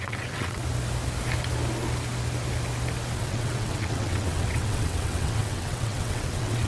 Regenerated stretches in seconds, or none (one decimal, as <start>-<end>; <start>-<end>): 0.0-0.6; 3.2-6.7